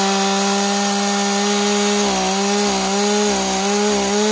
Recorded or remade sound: recorded